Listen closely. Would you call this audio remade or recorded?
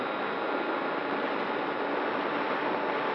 recorded